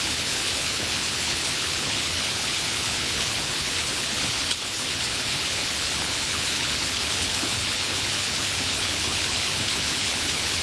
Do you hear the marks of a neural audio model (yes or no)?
yes